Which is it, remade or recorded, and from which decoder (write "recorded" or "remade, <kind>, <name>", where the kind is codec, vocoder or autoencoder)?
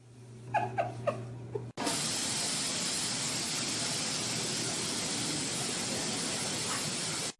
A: recorded